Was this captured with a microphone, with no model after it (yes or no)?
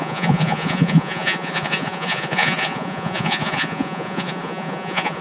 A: no